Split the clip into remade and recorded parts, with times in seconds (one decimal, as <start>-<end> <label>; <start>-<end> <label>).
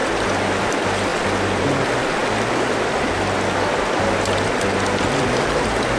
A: 0.0-6.0 recorded